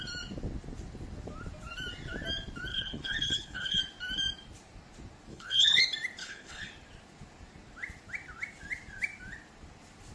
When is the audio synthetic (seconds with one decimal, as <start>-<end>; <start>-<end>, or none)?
2.7-3.8; 5.3-5.8; 6.2-6.7